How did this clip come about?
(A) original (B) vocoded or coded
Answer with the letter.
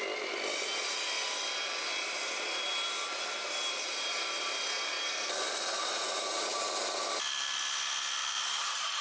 A